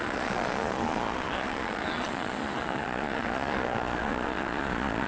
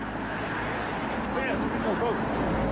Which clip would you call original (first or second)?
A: second